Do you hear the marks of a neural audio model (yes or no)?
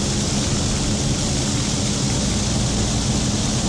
no